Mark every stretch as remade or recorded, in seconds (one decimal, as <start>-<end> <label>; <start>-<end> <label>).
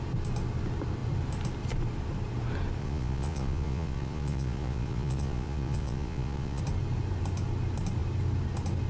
0.0-2.8 recorded; 2.8-6.6 remade; 6.6-8.9 recorded